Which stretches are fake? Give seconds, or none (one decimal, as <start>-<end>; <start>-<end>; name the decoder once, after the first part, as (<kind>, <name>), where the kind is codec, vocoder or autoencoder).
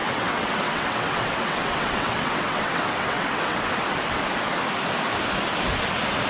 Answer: 0.0-3.6 (vocoder, WaveNeXt)